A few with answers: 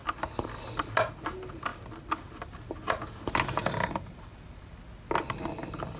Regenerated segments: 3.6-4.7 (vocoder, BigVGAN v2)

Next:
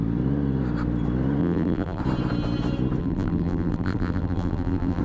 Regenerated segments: 1.4-2.0 (vocoder, BigVGAN v2); 3.0-5.0